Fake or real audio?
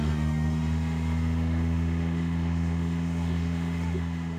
fake